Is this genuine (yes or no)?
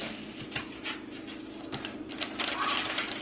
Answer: yes